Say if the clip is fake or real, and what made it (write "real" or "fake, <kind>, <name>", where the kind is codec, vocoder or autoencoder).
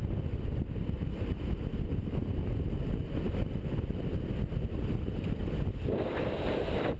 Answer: real